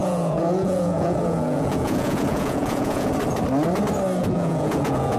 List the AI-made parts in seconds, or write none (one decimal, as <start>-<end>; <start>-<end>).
0.0-3.1; 4.2-5.2